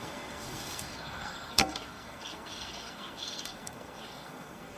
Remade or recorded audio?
remade